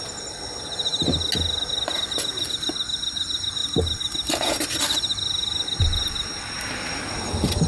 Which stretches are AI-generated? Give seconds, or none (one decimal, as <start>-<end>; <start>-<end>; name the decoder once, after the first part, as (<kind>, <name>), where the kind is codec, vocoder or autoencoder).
none